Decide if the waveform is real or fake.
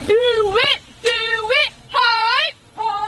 fake